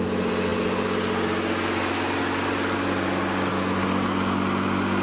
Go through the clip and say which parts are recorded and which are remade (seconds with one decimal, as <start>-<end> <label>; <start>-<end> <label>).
0.0-5.0 recorded